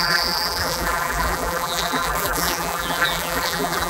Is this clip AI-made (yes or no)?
yes